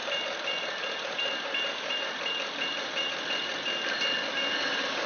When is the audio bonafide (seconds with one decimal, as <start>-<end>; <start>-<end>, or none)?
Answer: 3.1-5.1